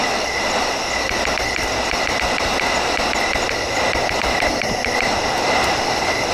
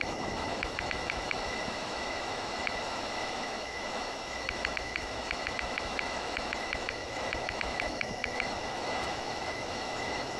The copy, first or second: second